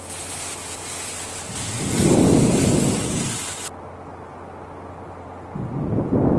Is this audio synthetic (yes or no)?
yes